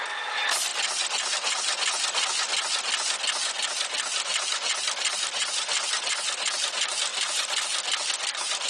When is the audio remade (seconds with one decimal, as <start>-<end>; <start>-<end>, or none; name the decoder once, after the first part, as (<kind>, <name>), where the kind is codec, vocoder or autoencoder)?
4.3-5.6 (vocoder, BigVGAN v2); 7.1-8.7